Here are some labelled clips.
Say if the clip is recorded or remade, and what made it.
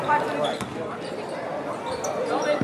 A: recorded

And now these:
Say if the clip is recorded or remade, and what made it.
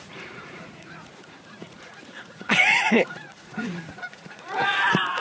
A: remade, vocoder, Vocos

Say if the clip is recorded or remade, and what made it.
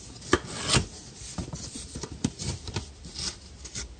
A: recorded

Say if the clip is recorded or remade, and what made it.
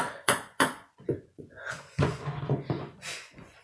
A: remade, vocoder, Vocos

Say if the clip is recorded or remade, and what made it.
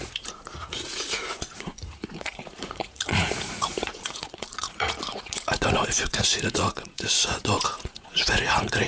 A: remade, vocoder, Vocos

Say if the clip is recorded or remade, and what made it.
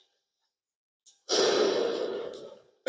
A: recorded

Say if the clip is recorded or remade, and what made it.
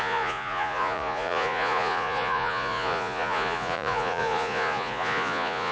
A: remade, vocoder, Vocos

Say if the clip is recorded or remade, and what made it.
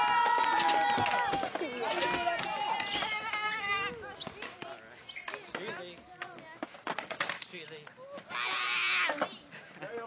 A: recorded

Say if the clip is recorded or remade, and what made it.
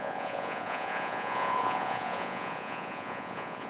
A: remade, vocoder, Vocos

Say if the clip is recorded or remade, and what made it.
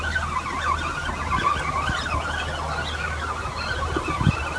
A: recorded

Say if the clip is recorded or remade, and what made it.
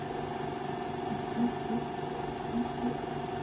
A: recorded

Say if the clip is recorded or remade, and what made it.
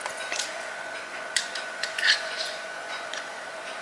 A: remade, vocoder, Vocos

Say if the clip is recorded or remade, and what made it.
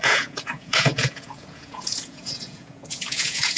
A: remade, vocoder, Vocos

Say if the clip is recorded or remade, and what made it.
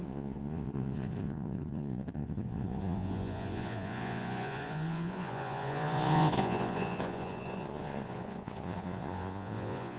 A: remade, vocoder, Vocos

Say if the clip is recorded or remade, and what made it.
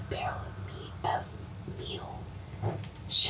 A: recorded